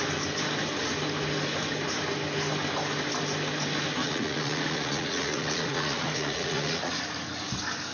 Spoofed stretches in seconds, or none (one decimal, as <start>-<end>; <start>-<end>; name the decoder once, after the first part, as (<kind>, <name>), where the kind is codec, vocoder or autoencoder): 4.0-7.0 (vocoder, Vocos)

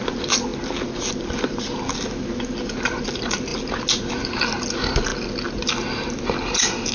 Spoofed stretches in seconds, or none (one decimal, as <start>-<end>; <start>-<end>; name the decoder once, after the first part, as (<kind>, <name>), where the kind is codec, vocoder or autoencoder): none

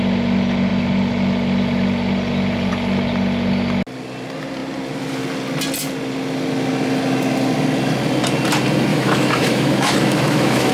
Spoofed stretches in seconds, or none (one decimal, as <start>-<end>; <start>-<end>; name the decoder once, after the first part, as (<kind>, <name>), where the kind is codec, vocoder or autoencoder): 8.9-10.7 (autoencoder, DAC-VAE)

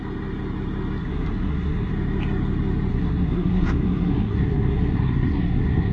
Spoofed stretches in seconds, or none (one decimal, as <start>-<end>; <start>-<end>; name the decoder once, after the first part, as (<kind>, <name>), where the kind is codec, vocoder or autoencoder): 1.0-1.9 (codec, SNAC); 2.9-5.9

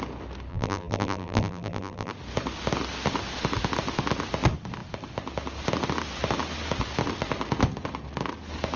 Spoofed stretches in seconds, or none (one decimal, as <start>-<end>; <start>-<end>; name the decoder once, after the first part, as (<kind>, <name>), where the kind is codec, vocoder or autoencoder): 0.5-2.1 (vocoder, BigVGAN v2)

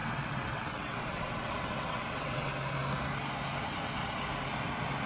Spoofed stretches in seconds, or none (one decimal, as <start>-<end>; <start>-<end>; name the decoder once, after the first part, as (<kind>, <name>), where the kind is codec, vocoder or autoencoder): 0.0-2.5 (vocoder, WaveNeXt)